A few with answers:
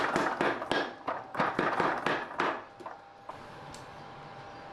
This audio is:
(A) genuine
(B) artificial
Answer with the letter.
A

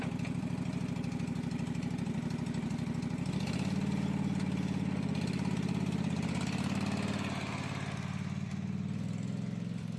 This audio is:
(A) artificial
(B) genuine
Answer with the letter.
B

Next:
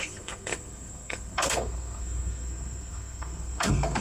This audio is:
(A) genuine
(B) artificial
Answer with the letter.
B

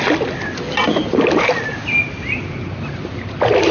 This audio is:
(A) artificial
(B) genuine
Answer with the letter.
B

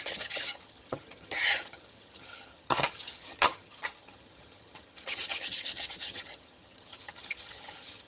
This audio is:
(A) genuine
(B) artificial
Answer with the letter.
B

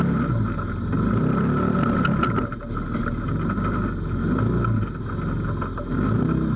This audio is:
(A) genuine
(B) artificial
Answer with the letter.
A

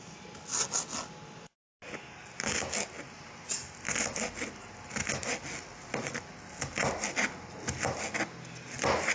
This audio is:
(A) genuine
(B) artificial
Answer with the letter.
A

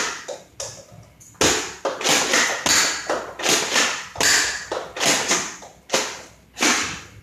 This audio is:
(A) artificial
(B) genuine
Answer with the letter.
B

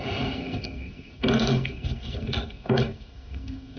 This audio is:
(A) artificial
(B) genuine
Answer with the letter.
A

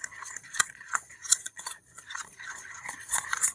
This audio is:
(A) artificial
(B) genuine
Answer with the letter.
A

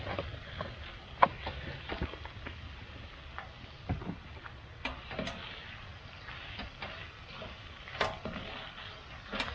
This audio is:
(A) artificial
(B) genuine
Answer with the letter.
B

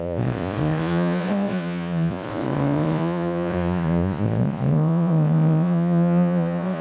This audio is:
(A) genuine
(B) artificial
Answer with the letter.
B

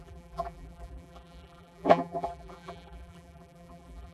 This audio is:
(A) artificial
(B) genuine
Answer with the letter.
A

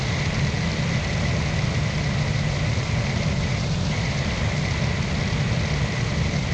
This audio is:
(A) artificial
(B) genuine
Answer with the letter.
B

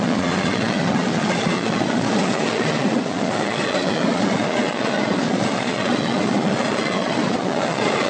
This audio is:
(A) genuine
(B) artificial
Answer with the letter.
B